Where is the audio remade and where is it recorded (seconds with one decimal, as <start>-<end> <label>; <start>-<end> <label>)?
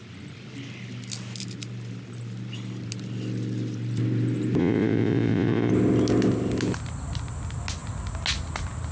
0.0-4.6 recorded; 4.6-5.7 remade; 5.7-8.9 recorded